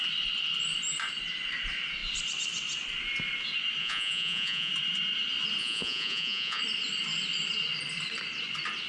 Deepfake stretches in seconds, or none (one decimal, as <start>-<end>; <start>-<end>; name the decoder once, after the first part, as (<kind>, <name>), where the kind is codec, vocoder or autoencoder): 3.8-4.7 (vocoder, Vocos); 5.6-6.6